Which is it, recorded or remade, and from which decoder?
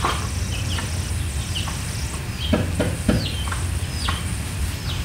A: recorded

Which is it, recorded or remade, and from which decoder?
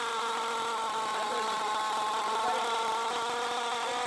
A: recorded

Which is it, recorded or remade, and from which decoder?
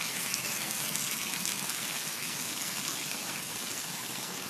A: remade, codec, SNAC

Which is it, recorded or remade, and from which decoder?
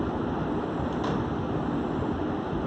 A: recorded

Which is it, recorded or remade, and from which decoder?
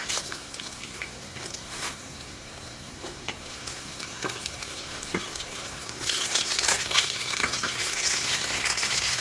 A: remade, codec, SNAC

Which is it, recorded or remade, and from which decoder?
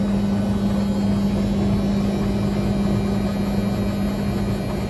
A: recorded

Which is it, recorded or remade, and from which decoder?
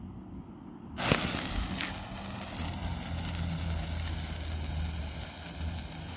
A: recorded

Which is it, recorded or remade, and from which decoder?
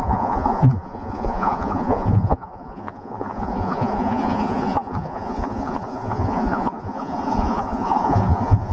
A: remade, vocoder, Vocos